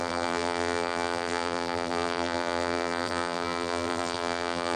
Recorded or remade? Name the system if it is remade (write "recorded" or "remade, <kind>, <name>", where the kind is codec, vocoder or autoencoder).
remade, vocoder, BigVGAN v2